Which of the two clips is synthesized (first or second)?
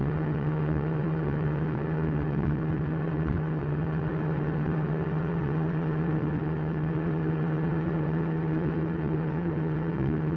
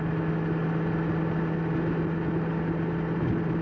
first